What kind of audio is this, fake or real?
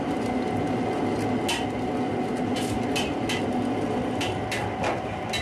real